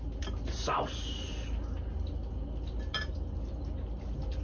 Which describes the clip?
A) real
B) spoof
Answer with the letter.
A